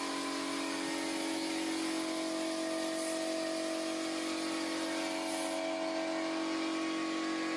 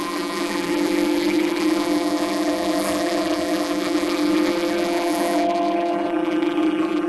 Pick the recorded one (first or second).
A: first